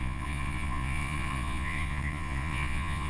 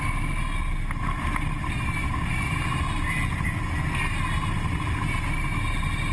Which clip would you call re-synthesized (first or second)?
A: first